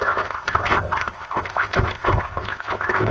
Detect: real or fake fake